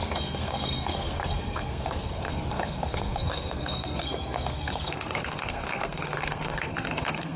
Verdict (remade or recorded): remade